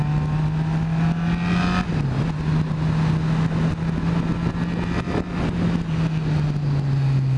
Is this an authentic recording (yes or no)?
yes